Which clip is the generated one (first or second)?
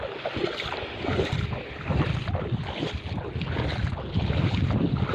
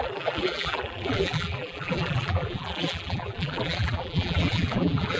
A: second